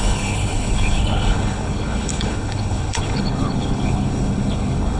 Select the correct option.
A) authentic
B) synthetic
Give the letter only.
B